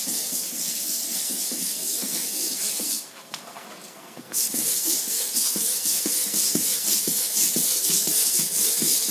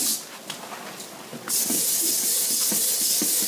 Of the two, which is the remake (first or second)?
first